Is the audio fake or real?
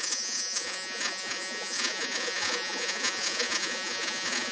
fake